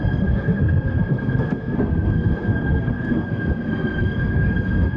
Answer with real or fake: fake